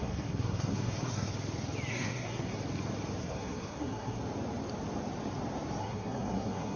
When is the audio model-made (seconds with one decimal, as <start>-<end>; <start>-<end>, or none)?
0.0-1.3; 1.9-2.6; 3.2-4.2; 5.8-6.8